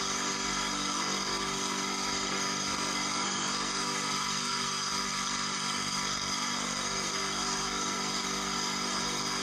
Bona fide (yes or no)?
no